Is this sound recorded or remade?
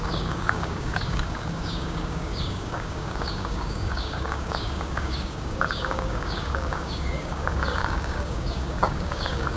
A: remade